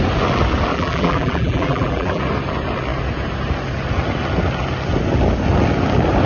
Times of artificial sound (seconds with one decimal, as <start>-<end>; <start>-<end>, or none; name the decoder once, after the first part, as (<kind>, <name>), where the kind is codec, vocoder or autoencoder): 0.7-2.2 (vocoder, BigVGAN v2)